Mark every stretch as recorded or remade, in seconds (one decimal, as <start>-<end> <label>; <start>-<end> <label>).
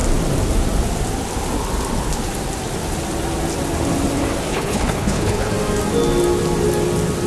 0.0-4.5 recorded; 4.5-5.5 remade; 5.5-7.3 recorded